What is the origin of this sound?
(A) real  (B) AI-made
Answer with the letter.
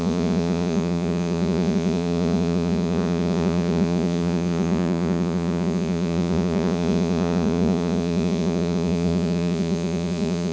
B